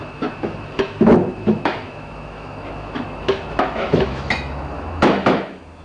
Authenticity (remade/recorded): remade